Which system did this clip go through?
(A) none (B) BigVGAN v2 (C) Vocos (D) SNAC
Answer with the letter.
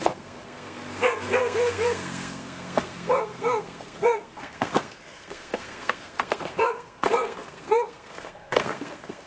D